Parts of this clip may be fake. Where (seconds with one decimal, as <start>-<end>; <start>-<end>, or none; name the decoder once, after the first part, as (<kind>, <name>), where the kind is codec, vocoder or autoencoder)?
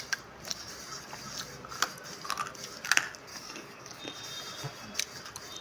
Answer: 3.3-4.0 (codec, DAC)